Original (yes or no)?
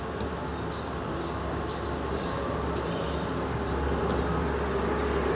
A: yes